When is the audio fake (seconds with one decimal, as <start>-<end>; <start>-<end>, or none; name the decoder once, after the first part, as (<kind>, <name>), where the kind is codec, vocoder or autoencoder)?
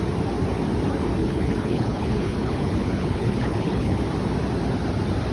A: 1.2-4.0 (codec, HILCodec)